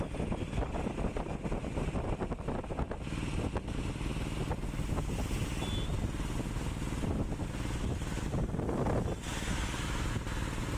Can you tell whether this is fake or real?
real